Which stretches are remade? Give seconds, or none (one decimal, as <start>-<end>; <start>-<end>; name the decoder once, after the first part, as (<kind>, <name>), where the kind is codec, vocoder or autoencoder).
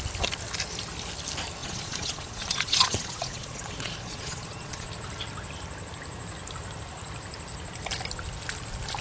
1.6-4.9 (vocoder, Vocos)